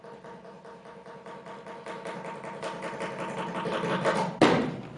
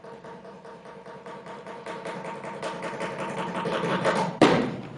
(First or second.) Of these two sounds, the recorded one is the first